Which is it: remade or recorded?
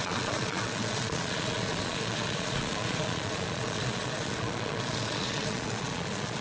remade